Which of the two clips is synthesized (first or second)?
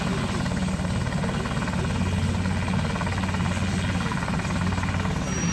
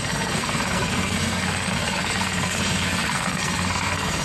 second